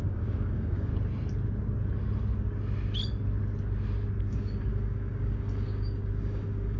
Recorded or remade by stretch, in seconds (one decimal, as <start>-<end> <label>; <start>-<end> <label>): 0.0-0.9 remade; 0.9-4.2 recorded; 4.2-6.8 remade